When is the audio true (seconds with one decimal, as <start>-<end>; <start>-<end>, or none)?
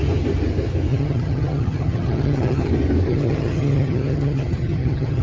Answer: 0.0-0.9; 2.7-3.1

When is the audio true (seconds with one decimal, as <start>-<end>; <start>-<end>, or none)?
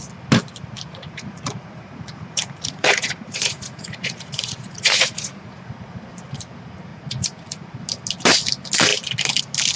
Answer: 0.0-0.9; 5.7-6.9; 7.8-9.8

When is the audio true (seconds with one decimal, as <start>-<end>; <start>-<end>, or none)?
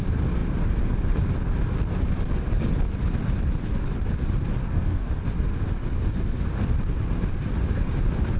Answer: 0.0-4.6; 5.1-8.4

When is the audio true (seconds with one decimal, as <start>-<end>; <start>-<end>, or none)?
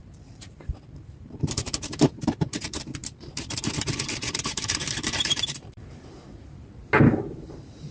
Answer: 6.8-7.3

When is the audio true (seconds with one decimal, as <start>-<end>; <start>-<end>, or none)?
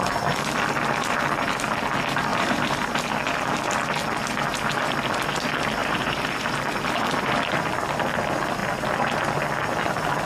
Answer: 0.0-2.3; 3.0-5.8; 6.5-10.3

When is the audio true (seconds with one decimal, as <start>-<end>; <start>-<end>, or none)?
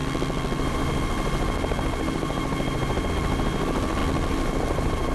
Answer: 0.0-5.1